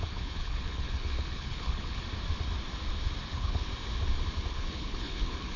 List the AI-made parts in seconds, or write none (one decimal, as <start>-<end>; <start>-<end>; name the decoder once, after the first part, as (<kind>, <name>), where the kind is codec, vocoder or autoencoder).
0.0-2.0 (codec, HILCodec); 3.3-3.7; 4.5-5.6